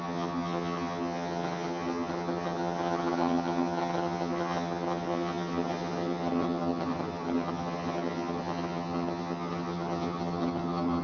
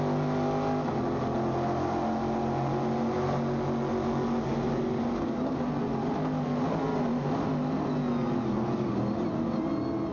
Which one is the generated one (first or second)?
first